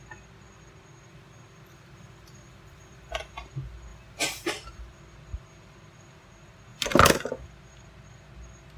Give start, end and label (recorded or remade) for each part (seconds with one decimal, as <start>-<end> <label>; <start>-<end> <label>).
0.0-1.1 recorded; 1.1-3.2 remade; 3.2-3.9 recorded; 3.9-5.0 remade; 5.0-6.7 recorded; 6.7-7.3 remade; 7.3-8.8 recorded